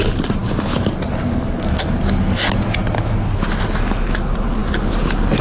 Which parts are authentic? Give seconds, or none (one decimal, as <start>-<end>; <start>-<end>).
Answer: 0.0-5.4